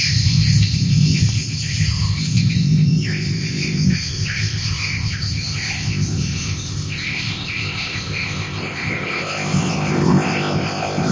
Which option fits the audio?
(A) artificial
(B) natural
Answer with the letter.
A